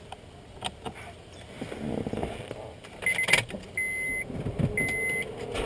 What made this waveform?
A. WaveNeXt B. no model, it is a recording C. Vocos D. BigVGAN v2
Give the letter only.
B